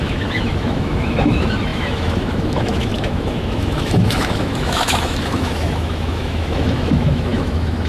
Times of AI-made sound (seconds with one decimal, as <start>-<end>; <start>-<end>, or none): 0.0-7.9